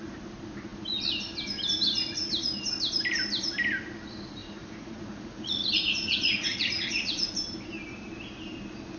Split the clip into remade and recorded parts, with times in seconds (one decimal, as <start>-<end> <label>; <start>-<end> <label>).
0.0-4.4 recorded; 4.4-7.3 remade; 7.3-9.0 recorded

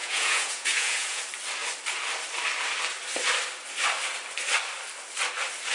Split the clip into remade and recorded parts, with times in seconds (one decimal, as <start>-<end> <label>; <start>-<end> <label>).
0.0-1.2 remade; 1.2-5.7 recorded

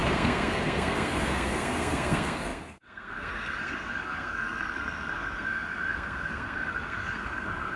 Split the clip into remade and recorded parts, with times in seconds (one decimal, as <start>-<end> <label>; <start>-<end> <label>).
0.0-7.8 remade

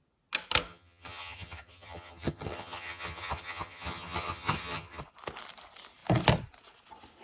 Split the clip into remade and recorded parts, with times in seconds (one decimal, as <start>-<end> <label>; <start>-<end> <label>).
0.0-0.7 recorded; 0.7-5.0 remade; 5.0-7.2 recorded

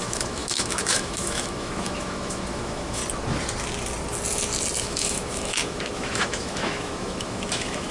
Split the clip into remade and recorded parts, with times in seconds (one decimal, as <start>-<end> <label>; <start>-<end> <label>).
0.0-3.0 remade; 3.0-4.8 recorded; 4.8-7.9 remade

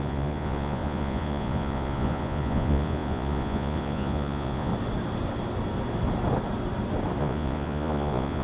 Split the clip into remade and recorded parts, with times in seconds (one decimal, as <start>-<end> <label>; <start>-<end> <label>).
0.0-4.7 remade; 4.7-7.2 recorded; 7.2-8.4 remade

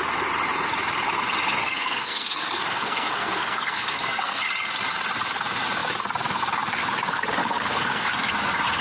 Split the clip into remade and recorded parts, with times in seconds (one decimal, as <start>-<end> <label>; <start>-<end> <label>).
0.0-1.6 recorded; 1.6-4.4 remade; 4.4-7.4 recorded; 7.4-8.1 remade; 8.1-8.8 recorded